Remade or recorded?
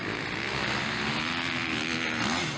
recorded